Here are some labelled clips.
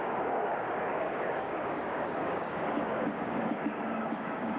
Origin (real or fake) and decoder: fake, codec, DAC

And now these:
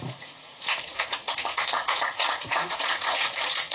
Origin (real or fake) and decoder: fake, vocoder, Vocos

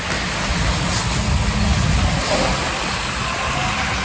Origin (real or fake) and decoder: real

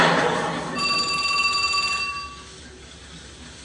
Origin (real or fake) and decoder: real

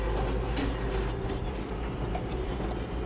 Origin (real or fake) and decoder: real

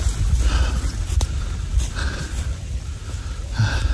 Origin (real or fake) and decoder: real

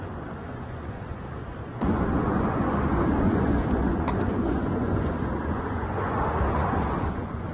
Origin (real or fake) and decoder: fake, vocoder, Vocos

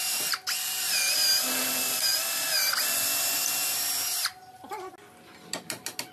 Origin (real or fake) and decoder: real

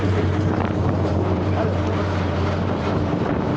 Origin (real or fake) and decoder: fake, vocoder, BigVGAN v2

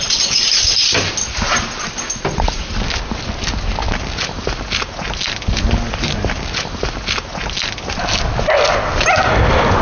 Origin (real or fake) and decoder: real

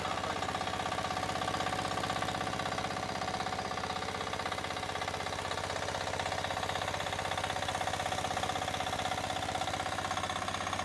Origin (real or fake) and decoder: real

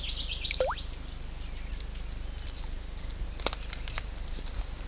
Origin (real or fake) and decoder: real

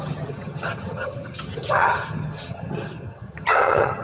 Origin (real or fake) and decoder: fake, vocoder, HiFi-GAN